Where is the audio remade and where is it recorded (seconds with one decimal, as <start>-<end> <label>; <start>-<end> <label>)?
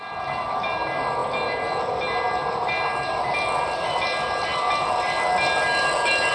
0.0-6.3 recorded